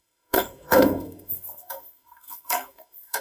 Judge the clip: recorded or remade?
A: remade